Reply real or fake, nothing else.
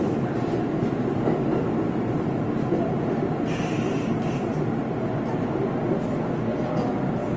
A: real